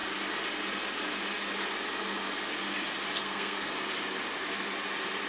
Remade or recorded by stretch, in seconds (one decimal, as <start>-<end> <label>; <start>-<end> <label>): 0.0-3.2 recorded; 3.2-3.7 remade; 3.7-5.3 recorded